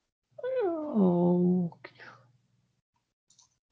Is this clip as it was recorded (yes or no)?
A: yes